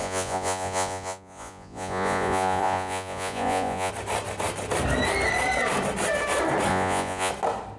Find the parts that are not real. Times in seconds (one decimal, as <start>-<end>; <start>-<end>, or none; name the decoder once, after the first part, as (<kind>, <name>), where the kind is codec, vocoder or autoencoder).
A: 0.0-3.9 (vocoder, Vocos); 6.7-7.3